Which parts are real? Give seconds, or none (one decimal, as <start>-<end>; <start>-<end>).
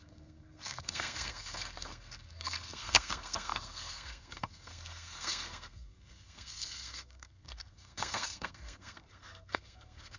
none